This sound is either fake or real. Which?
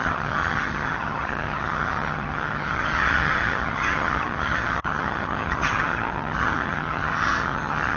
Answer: fake